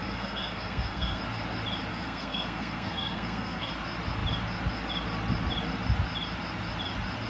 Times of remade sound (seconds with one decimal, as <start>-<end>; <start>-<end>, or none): 0.0-1.2; 1.9-3.7